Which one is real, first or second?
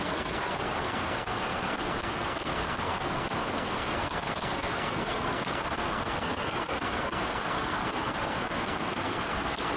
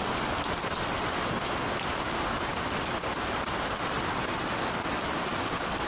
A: second